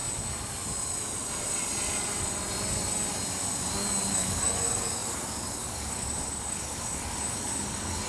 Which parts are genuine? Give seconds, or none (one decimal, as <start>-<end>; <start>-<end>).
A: 0.0-4.1